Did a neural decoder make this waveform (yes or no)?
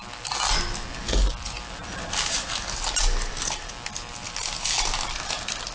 no